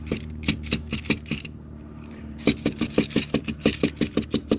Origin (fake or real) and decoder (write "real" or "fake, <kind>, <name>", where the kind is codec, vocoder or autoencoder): fake, vocoder, BigVGAN v2